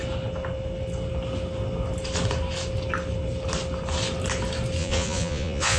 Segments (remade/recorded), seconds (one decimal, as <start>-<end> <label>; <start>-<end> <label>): 0.0-4.8 recorded; 4.8-5.8 remade